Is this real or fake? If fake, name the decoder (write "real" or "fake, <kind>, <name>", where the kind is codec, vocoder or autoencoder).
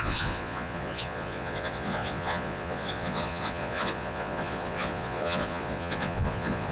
fake, vocoder, Vocos